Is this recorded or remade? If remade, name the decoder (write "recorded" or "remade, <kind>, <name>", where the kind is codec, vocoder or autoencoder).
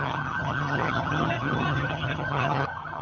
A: remade, vocoder, HiFi-GAN